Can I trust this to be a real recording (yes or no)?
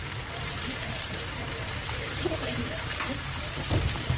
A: no